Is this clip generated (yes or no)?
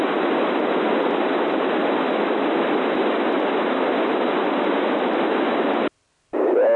no